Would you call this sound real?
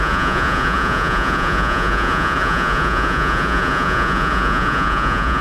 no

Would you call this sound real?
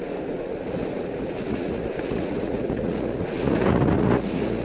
no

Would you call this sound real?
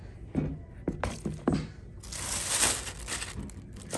yes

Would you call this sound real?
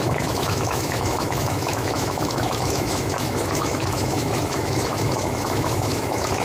no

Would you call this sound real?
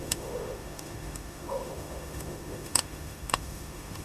no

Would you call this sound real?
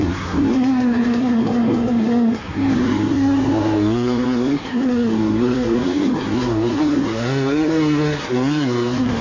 no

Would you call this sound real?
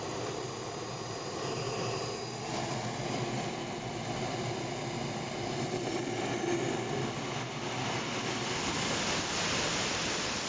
yes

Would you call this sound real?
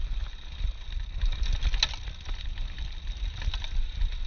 yes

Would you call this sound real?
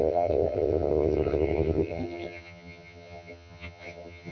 no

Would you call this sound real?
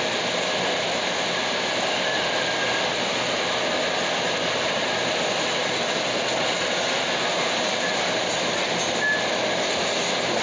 yes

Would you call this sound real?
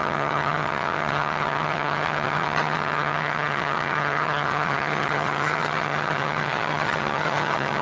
no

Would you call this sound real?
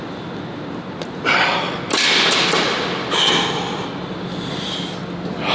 yes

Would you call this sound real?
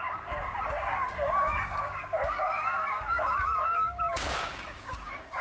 no